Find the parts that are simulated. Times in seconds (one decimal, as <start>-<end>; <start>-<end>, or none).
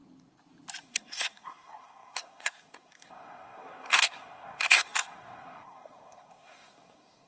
0.8-7.3